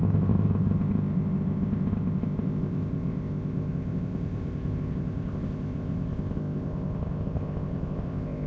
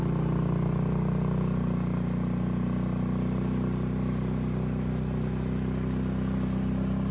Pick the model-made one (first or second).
first